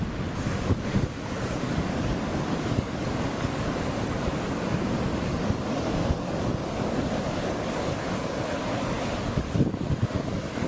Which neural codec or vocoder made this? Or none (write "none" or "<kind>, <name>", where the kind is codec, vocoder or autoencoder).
codec, DAC